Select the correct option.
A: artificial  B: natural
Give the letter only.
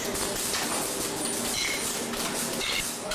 B